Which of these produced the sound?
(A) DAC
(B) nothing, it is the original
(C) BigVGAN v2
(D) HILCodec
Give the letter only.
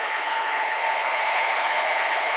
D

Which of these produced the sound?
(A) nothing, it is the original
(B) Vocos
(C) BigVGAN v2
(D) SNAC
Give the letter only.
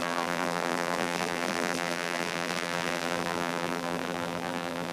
C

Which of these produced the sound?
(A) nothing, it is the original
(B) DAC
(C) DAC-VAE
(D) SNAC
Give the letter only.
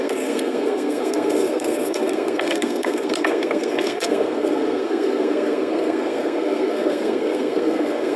D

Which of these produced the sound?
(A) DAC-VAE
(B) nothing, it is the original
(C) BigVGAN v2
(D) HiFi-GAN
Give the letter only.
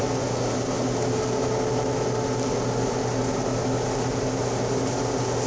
B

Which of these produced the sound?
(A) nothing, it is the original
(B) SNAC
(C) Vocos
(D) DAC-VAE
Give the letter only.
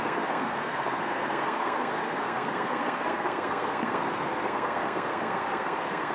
B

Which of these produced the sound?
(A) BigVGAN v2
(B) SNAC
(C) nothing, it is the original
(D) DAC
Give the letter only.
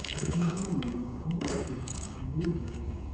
D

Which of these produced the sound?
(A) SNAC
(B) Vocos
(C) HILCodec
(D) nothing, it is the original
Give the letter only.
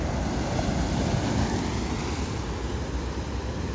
D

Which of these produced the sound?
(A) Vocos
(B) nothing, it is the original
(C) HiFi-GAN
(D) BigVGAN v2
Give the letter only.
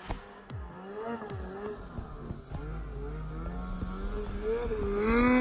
B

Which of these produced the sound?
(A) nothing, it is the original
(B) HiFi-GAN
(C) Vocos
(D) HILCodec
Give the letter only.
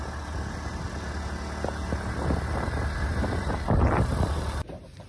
A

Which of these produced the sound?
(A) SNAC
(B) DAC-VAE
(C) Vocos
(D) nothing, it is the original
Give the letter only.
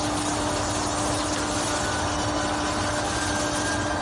D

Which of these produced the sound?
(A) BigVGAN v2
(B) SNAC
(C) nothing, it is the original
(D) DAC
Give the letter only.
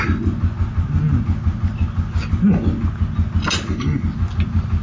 C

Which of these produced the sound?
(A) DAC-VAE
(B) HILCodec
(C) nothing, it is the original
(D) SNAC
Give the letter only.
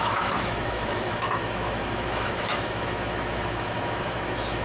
A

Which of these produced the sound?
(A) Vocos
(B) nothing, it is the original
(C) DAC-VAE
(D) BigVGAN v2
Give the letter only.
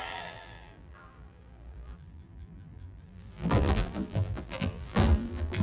D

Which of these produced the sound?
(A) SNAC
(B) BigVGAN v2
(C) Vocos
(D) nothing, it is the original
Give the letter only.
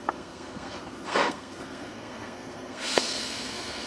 A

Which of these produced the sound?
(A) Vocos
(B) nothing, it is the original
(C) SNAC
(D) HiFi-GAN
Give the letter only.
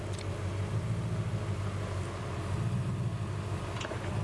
B